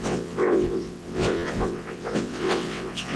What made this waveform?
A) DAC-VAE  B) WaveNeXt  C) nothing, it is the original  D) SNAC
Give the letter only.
B